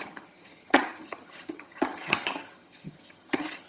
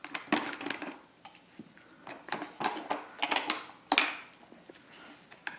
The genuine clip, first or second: second